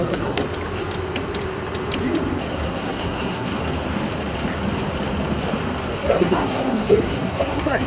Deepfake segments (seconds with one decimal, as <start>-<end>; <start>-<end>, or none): 0.0-0.4; 2.5-3.6; 6.1-7.9

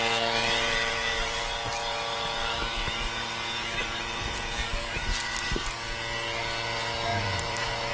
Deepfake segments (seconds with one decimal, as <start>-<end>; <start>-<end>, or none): 0.4-2.5; 3.8-5.7; 7.1-7.9

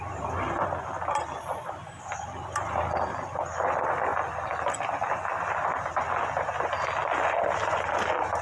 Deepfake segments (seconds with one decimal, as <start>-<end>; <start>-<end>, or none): none

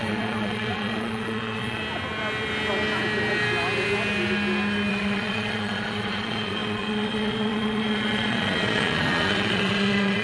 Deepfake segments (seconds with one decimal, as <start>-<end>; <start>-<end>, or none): 0.0-1.8; 4.9-10.2

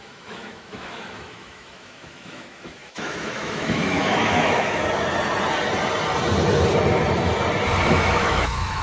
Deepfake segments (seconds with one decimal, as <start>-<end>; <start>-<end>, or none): 0.0-4.8; 7.9-8.8

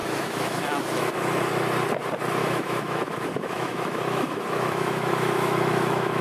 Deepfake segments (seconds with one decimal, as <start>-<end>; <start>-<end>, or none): 0.0-1.4; 2.4-6.2

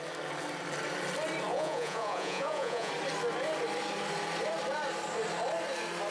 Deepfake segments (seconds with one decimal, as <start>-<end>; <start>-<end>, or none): 1.5-2.9

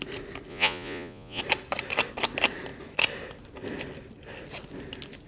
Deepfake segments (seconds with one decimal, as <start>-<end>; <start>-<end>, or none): 0.5-1.4